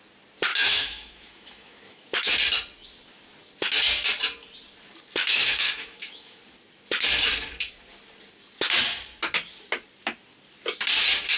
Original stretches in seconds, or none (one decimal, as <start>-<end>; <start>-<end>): 0.0-0.5; 2.3-5.2; 6.4-11.4